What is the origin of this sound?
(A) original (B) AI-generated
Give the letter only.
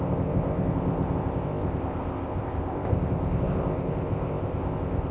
B